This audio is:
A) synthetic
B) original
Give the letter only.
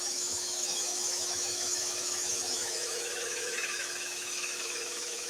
A